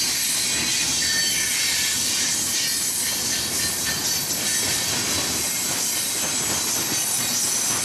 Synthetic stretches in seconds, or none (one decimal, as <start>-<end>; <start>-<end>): none